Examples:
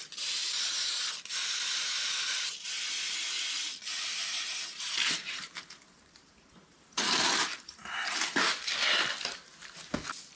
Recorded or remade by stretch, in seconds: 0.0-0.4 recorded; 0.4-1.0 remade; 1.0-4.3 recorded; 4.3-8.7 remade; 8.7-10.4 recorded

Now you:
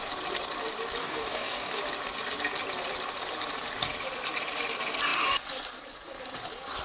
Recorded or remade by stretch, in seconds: 0.0-1.0 recorded; 1.0-1.8 remade; 1.8-6.8 recorded

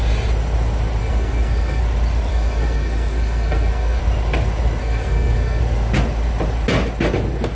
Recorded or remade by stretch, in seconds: 0.0-1.0 recorded; 1.0-1.8 remade; 1.8-2.3 recorded; 2.3-4.0 remade; 4.0-4.8 recorded; 4.8-5.6 remade; 5.6-7.5 recorded

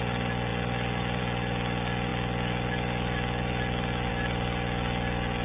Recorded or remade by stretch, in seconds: 0.0-5.4 recorded

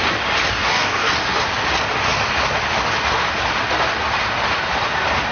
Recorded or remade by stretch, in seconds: 0.0-0.5 recorded; 0.5-1.1 remade; 1.1-5.3 recorded

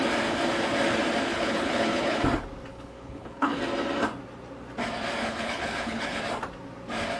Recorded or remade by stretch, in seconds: 0.0-1.3 recorded; 1.3-2.2 remade; 2.2-2.7 recorded; 2.7-3.6 remade; 3.6-5.2 recorded; 5.2-6.2 remade; 6.2-7.2 recorded